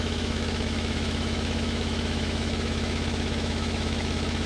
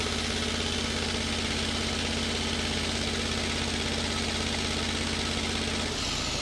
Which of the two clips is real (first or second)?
second